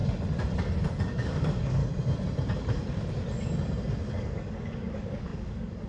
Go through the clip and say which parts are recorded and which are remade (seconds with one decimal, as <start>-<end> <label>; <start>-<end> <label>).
0.0-1.0 recorded; 1.0-1.8 remade; 1.8-4.1 recorded; 4.1-5.9 remade